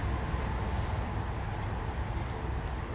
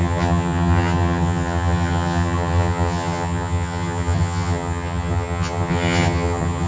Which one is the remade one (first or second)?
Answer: second